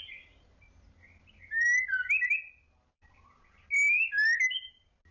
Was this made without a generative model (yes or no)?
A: yes